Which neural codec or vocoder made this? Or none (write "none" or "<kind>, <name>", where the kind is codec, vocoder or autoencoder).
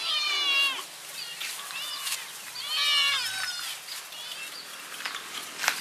none